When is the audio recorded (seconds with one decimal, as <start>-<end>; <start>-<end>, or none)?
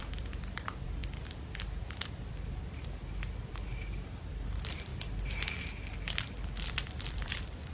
1.0-2.1; 4.9-6.6